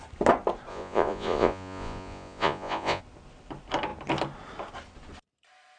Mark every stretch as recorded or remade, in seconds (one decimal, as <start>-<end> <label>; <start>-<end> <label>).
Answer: 0.0-0.7 recorded; 0.7-3.0 remade; 3.0-5.8 recorded